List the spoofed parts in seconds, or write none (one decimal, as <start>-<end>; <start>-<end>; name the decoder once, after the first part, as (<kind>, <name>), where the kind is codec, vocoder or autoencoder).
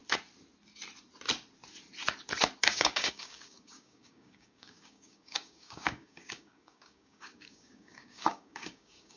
2.6-9.2 (codec, DAC)